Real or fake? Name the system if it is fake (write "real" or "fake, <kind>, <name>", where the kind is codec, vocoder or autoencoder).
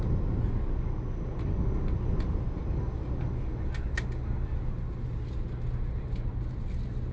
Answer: real